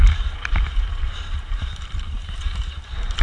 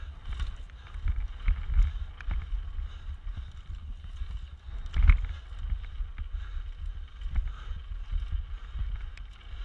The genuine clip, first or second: second